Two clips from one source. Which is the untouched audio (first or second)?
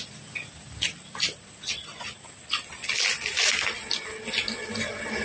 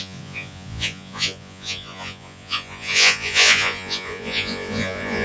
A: first